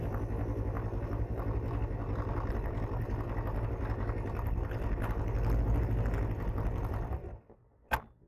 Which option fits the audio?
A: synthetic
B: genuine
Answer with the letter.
B